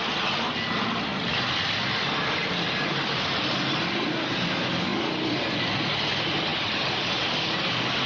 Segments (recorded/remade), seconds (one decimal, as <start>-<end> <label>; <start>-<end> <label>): 0.0-4.9 recorded; 4.9-5.4 remade; 5.4-6.5 recorded; 6.5-7.2 remade; 7.2-8.1 recorded